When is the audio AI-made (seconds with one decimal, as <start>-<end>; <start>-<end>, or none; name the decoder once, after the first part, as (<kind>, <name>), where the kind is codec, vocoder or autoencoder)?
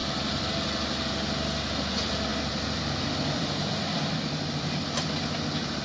2.3-5.3 (vocoder, BigVGAN v2)